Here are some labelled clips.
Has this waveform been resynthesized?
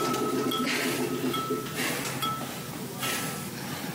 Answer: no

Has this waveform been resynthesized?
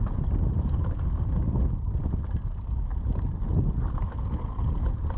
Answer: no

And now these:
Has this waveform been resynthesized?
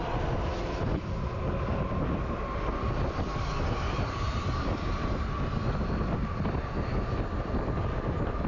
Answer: no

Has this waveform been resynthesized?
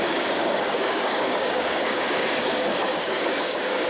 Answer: yes